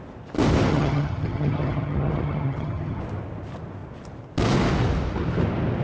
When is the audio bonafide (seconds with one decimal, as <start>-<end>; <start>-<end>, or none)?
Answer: 0.0-0.7; 3.0-5.8